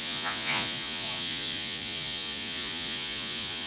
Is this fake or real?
fake